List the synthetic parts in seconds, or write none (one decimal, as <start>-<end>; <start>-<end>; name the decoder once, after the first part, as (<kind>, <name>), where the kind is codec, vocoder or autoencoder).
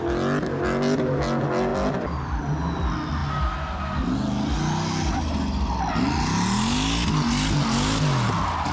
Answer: none